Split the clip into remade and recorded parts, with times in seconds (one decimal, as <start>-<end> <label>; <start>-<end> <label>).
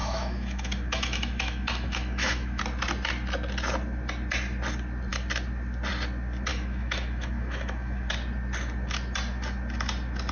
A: 0.0-2.6 remade; 2.6-6.5 recorded; 6.5-8.1 remade; 8.1-10.3 recorded